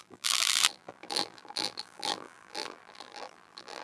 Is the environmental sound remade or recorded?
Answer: remade